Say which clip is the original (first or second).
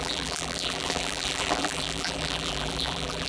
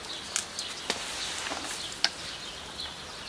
second